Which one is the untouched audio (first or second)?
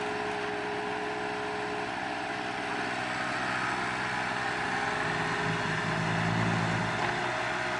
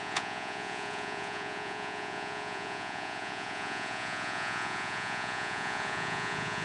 first